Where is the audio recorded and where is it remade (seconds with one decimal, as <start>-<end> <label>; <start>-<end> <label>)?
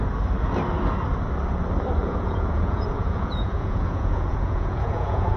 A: 0.0-2.0 recorded; 2.0-5.4 remade